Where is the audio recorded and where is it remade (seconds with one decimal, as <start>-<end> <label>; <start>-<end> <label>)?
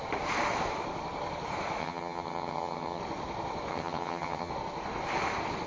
0.0-1.8 recorded; 1.8-3.0 remade; 3.0-3.7 recorded; 3.7-4.5 remade; 4.5-5.7 recorded